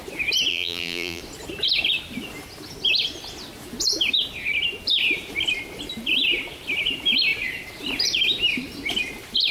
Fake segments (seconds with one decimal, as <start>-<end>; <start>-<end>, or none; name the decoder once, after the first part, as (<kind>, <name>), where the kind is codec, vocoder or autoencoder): 0.5-1.2 (vocoder, BigVGAN v2)